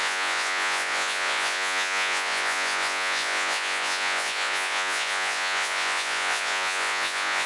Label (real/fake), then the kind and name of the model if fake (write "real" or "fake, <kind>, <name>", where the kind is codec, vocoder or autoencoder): fake, vocoder, Vocos